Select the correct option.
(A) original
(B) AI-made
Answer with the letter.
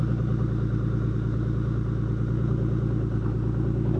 A